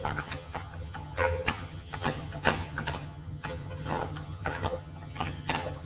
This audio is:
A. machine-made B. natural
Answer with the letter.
A